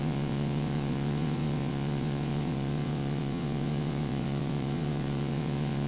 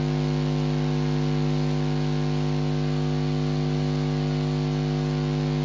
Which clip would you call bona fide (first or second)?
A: second